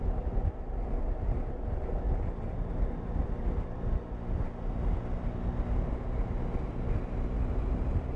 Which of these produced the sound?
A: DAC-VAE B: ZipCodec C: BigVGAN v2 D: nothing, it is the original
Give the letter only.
D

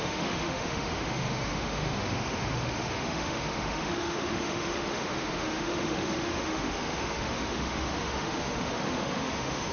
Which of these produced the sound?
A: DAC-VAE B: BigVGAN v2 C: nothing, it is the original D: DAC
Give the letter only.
A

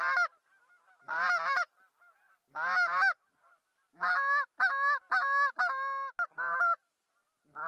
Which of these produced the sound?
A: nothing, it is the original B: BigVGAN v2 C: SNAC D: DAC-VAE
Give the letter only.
A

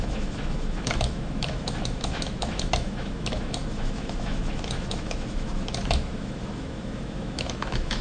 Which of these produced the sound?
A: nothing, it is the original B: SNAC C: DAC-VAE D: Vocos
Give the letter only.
C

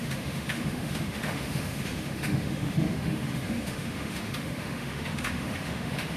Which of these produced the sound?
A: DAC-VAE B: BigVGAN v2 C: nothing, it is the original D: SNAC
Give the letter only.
A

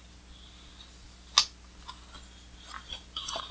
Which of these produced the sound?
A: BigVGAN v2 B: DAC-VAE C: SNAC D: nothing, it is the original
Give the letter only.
D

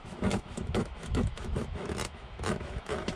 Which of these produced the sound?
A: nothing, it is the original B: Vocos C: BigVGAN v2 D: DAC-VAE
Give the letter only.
D